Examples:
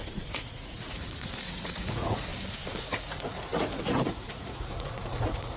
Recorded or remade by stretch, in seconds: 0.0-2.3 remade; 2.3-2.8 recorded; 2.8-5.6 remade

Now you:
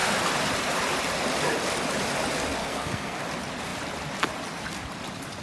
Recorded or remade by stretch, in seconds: 0.0-2.6 recorded; 2.6-3.2 remade; 3.2-5.4 recorded

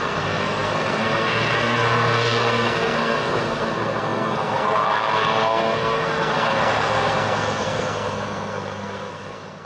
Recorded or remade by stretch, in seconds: 0.0-9.7 remade

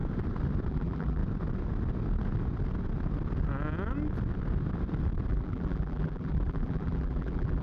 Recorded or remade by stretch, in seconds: 0.0-0.7 recorded; 0.7-1.2 remade; 1.2-5.3 recorded; 5.3-7.6 remade